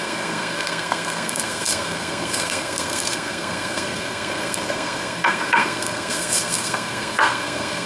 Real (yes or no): no